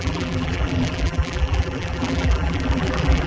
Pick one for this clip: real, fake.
fake